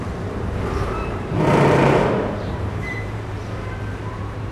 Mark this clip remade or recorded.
remade